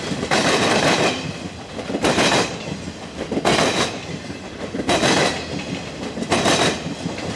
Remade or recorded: remade